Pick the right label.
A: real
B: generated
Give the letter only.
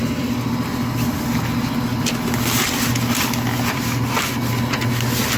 A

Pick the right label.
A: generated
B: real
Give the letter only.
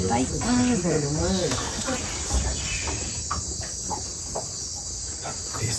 B